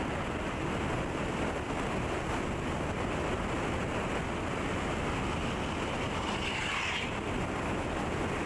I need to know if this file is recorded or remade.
recorded